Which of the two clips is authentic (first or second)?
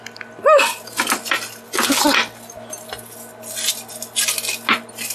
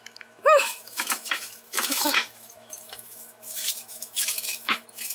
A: first